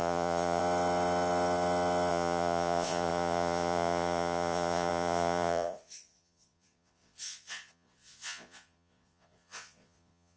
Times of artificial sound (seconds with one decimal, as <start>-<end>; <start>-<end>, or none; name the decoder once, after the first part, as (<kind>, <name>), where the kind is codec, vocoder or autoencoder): 0.0-0.6 (vocoder, Vocos); 2.1-10.4